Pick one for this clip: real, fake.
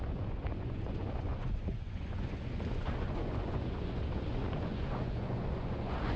fake